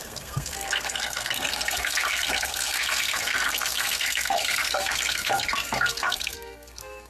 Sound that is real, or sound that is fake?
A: fake